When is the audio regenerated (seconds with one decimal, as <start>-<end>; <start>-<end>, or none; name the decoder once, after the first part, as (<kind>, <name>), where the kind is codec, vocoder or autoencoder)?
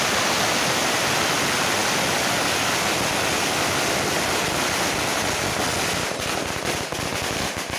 none